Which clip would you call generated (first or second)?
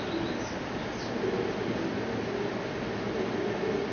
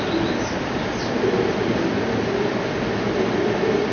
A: second